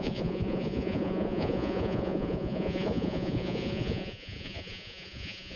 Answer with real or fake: fake